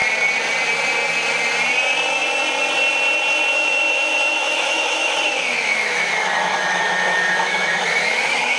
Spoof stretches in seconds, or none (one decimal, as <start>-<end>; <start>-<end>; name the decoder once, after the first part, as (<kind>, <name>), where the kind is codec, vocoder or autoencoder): 3.5-8.6 (autoencoder, DAC-VAE)